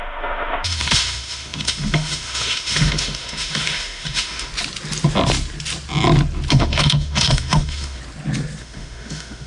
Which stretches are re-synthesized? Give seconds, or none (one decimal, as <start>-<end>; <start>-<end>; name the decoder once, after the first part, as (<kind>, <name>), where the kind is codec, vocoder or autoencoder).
0.0-4.5 (autoencoder, DAC-VAE); 6.5-8.0; 8.6-9.5